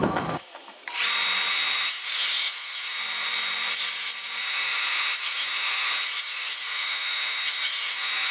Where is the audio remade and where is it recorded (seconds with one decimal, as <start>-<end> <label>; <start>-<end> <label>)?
0.0-0.8 remade; 0.8-1.5 recorded; 1.5-3.0 remade; 3.0-4.4 recorded; 4.4-8.3 remade